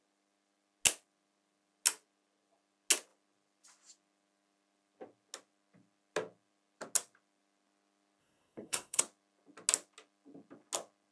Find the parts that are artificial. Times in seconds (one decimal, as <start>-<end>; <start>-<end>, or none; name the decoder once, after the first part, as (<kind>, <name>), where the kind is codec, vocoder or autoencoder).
8.2-9.0 (codec, SNAC)